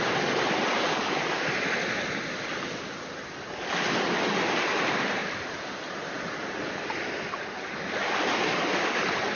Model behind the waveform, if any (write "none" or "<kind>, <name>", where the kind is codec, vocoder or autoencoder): none